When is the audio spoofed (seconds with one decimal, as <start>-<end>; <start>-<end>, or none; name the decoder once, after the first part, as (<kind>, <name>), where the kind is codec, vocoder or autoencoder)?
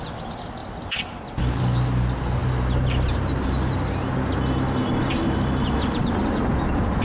none